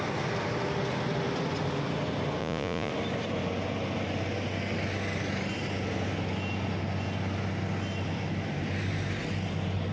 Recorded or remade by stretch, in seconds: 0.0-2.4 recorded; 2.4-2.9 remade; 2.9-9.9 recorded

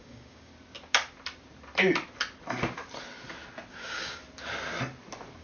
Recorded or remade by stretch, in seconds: 0.0-0.5 remade; 0.5-3.7 recorded; 3.7-4.2 remade; 4.2-5.4 recorded

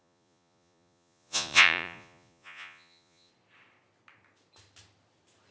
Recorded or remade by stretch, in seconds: 0.0-3.3 remade; 3.3-5.5 recorded